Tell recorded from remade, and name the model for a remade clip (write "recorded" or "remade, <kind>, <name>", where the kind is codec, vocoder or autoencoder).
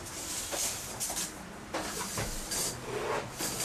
recorded